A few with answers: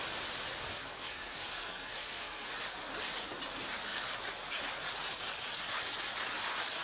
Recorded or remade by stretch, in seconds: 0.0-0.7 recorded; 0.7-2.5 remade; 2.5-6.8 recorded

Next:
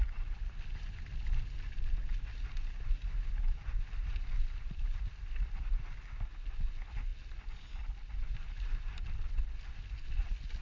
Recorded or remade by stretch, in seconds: 0.0-10.6 recorded

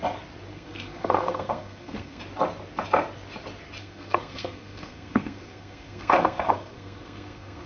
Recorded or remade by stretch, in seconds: 0.0-0.5 recorded; 0.5-2.2 remade; 2.2-3.8 recorded; 3.8-7.7 remade

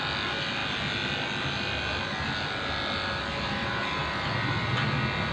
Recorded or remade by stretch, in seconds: 0.0-5.3 recorded

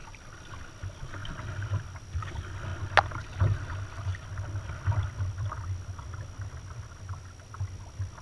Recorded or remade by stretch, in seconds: 0.0-0.5 remade; 0.5-1.2 recorded; 1.2-2.3 remade; 2.3-8.2 recorded

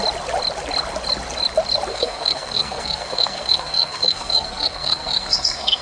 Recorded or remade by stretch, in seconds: 0.0-1.9 recorded; 1.9-5.8 remade

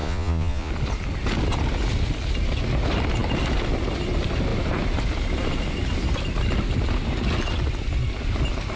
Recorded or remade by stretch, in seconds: 0.0-0.7 remade; 0.7-8.8 recorded

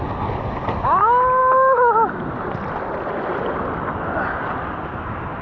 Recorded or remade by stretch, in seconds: 0.0-5.4 recorded